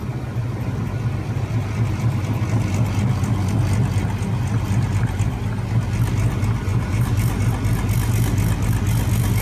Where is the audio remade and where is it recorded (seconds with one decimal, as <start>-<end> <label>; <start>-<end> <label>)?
0.0-6.7 recorded; 6.7-7.4 remade; 7.4-9.4 recorded